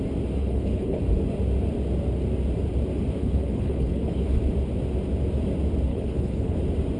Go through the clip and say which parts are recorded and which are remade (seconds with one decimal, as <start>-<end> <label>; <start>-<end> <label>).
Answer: 0.0-0.4 recorded; 0.4-1.0 remade; 1.0-3.2 recorded; 3.2-4.4 remade; 4.4-5.9 recorded; 5.9-6.6 remade; 6.6-7.0 recorded